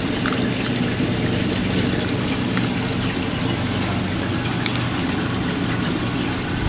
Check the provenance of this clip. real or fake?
real